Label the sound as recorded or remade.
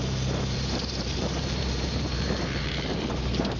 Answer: remade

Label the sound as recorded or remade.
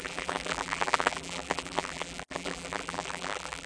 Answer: remade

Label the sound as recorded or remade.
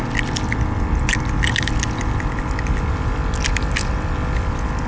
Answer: recorded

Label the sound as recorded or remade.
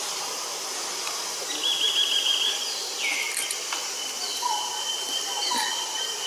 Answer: remade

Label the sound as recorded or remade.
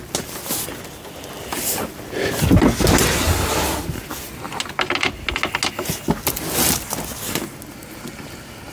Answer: recorded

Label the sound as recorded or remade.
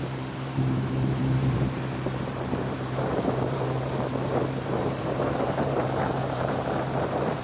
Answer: remade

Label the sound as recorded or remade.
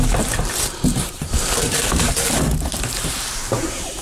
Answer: remade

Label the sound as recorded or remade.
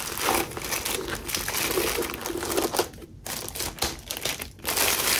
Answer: recorded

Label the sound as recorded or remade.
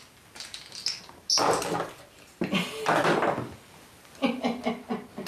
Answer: recorded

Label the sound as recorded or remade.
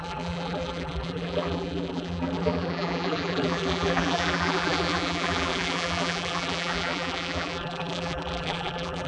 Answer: remade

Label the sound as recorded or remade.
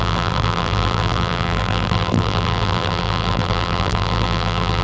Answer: remade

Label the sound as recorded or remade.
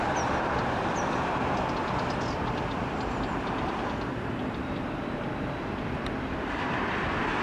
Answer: remade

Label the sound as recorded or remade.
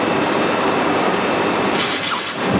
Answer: remade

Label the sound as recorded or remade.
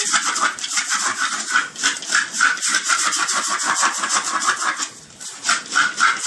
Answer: recorded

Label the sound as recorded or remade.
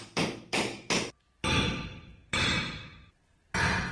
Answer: remade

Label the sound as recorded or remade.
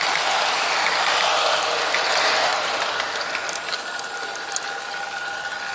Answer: remade